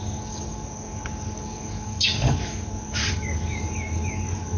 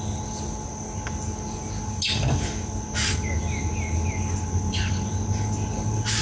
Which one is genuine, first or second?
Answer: second